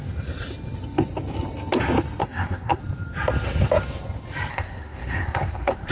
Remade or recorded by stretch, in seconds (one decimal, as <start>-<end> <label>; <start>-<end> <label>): 0.0-2.2 recorded; 2.2-2.8 remade; 2.8-4.5 recorded; 4.5-5.9 remade